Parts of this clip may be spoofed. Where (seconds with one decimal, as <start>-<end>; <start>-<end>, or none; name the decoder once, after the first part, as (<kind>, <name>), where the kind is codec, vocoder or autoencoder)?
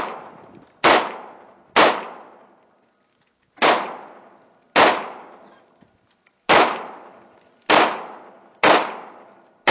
3.1-3.7 (codec, DAC)